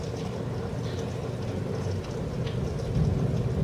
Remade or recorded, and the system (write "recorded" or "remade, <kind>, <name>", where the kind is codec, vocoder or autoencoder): recorded